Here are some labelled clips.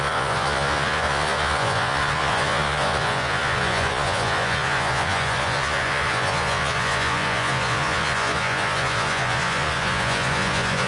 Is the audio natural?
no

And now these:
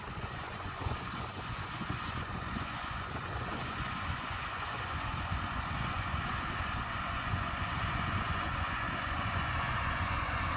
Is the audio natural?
no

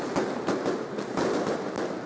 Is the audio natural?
yes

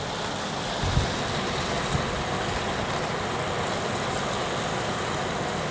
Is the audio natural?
yes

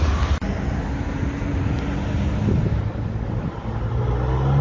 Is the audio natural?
yes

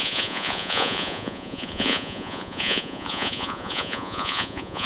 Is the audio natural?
no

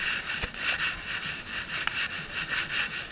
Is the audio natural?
yes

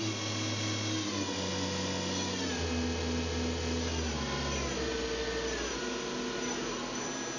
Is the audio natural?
yes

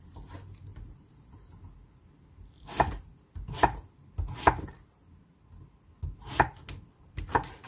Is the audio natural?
yes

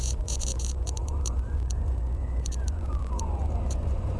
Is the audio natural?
no